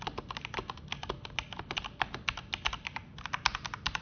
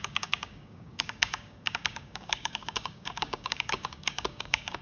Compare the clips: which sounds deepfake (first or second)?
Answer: second